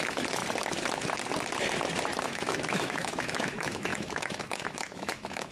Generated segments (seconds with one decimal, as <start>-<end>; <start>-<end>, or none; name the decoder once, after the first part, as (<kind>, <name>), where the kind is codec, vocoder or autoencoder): 0.0-0.4 (autoencoder, DAC-VAE); 2.2-5.5